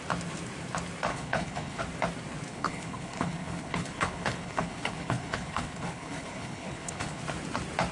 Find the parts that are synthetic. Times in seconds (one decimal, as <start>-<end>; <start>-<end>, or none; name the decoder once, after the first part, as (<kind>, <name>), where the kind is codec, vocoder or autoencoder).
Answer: 1.1-1.8 (codec, HILCodec); 2.5-7.2